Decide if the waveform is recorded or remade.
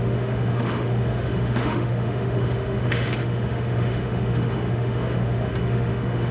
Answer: remade